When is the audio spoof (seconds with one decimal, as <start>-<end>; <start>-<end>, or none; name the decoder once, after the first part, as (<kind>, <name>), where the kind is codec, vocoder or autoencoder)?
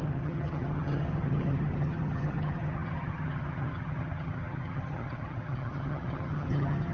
0.0-6.9 (vocoder, HiFi-GAN)